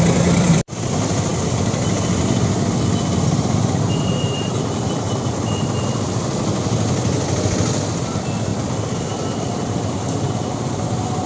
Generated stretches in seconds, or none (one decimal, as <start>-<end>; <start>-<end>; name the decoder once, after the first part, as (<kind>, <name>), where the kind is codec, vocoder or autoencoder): 0.0-11.3 (vocoder, BigVGAN v2)